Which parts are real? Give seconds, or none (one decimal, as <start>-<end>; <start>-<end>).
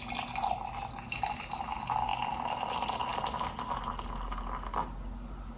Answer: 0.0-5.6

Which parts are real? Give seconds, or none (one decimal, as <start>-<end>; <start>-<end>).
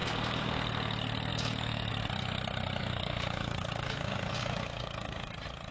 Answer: 0.6-1.3; 1.9-2.8; 5.3-5.7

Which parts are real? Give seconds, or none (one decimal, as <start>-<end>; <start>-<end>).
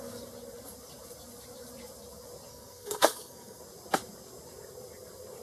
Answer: 0.0-2.5; 3.6-5.4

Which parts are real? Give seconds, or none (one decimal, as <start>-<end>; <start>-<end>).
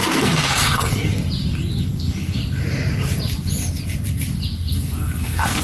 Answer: 1.1-1.8; 2.4-4.7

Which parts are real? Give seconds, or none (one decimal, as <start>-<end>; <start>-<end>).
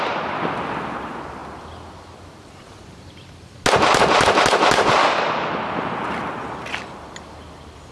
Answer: 0.0-7.9